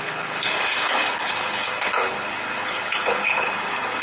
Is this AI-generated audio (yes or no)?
yes